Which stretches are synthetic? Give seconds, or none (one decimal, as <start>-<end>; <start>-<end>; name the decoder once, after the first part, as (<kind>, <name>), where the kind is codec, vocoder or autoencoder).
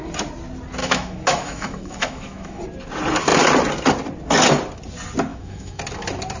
0.8-2.6 (autoencoder, DAC-VAE); 5.3-5.8